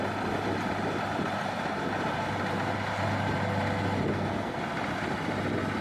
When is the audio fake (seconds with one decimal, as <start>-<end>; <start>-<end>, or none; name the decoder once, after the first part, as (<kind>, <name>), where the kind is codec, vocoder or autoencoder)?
4.1-4.6 (codec, SNAC)